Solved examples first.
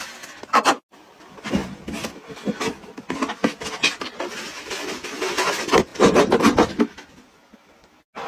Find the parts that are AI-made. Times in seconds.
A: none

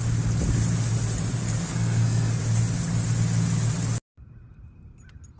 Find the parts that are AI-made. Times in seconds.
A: 1.4-2.4 (codec, SNAC)

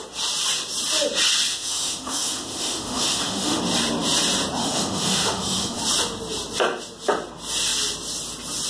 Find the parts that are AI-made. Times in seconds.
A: 1.5-3.6 (autoencoder, DAC-VAE); 4.6-5.8

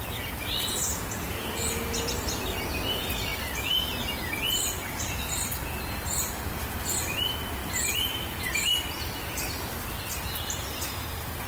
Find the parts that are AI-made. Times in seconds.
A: 0.6-2.1 (vocoder, Vocos)

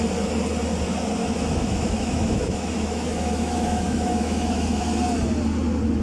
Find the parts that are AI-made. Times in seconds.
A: 1.2-4.8 (autoencoder, DAC-VAE)